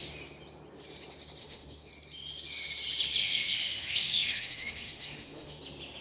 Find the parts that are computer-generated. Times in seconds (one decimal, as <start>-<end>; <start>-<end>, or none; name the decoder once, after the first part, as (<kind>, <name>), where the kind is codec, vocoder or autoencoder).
1.4-1.9 (autoencoder, DAC-VAE); 3.2-5.6